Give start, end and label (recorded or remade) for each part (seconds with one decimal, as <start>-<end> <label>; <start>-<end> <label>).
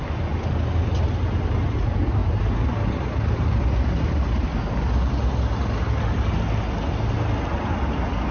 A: 0.0-8.3 recorded